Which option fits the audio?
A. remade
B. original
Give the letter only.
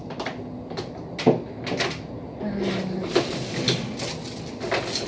B